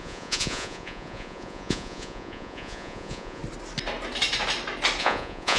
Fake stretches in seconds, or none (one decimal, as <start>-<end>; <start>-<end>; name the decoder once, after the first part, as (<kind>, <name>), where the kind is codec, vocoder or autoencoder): 0.0-3.4 (vocoder, Vocos); 5.0-5.6